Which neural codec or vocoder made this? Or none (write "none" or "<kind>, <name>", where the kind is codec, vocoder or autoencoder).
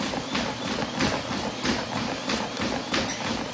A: none